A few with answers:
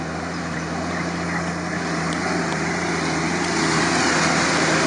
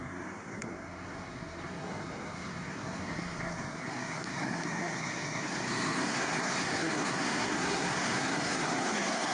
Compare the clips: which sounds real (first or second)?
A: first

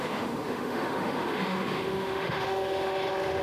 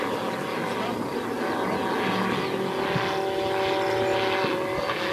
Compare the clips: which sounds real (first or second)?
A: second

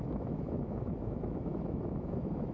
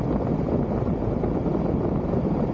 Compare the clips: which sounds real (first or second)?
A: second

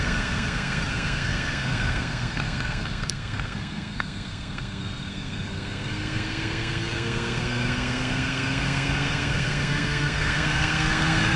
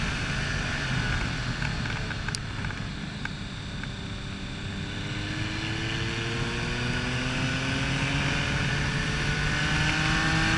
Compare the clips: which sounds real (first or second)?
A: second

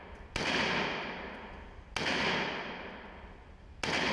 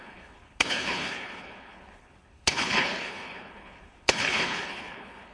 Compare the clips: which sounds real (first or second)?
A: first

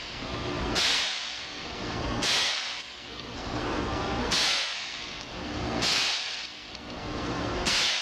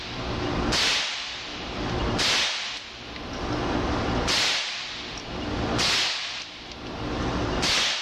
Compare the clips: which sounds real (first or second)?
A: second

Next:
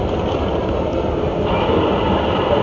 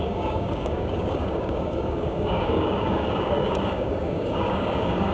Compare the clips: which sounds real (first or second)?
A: first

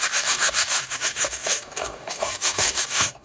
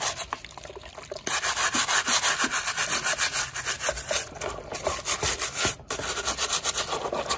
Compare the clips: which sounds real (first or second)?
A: second